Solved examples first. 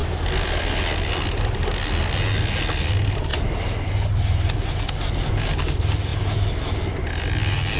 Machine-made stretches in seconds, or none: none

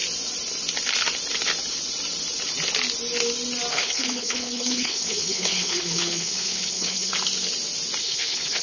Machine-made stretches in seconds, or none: 3.7-7.1 (codec, HILCodec); 8.0-8.6

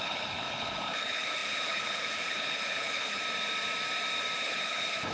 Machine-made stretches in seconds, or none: 0.0-3.2 (codec, HILCodec); 4.4-5.1

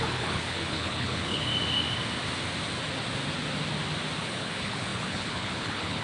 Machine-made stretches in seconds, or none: 0.0-1.5 (codec, HILCodec); 4.2-6.0

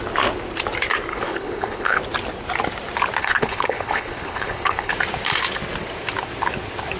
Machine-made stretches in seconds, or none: 1.1-2.0 (codec, HILCodec); 3.2-4.9

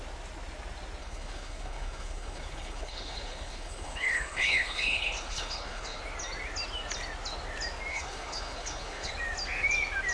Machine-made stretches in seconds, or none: 1.0-6.0 (codec, HILCodec); 7.9-9.1